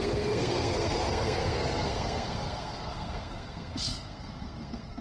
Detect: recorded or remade remade